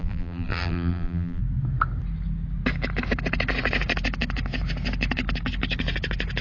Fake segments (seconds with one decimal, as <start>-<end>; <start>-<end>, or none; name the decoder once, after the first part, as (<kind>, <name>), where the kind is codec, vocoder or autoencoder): 0.0-1.4 (vocoder, BigVGAN v2)